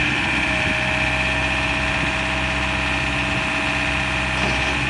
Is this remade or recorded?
recorded